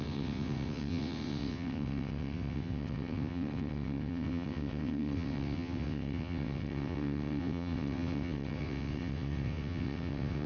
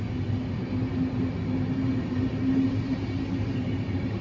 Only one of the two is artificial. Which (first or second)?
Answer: first